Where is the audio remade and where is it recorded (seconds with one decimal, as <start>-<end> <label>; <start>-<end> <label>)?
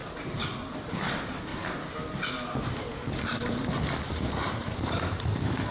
0.0-0.7 recorded; 0.7-1.5 remade; 1.5-2.6 recorded; 2.6-3.5 remade; 3.5-4.5 recorded; 4.5-5.7 remade